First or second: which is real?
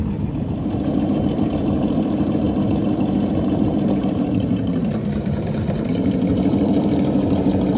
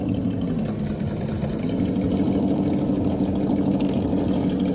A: second